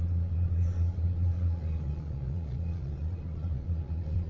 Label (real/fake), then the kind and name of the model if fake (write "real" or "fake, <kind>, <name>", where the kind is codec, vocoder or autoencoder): fake, vocoder, Vocos